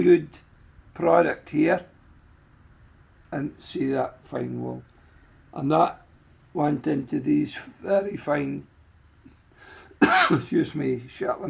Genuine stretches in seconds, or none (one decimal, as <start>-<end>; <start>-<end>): 0.0-5.6; 6.5-11.5